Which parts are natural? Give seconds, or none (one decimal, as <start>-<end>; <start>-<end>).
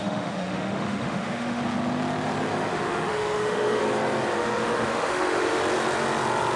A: 1.6-2.7; 3.8-4.4; 5.6-6.6